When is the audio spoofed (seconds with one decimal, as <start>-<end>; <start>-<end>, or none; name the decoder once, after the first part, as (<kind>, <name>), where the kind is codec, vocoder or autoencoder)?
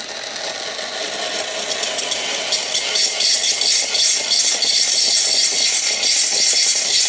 none